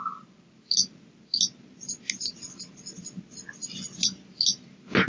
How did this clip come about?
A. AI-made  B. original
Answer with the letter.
B